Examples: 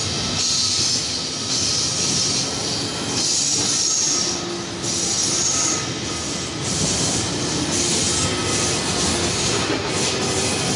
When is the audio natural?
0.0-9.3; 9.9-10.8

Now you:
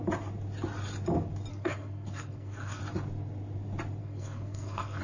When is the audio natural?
0.0-1.5; 2.8-4.0

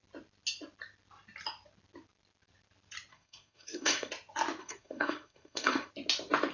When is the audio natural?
0.0-3.1; 4.1-4.6; 5.9-6.5